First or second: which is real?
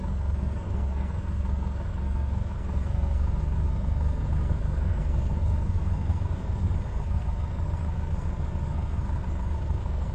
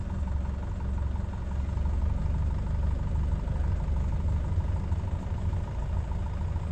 second